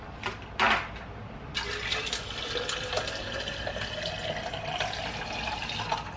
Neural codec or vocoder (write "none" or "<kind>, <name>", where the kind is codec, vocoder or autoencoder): none